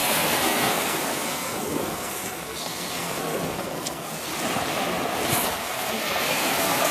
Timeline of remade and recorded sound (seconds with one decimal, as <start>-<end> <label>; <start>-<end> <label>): 0.0-4.3 remade; 4.3-5.3 recorded; 5.3-6.9 remade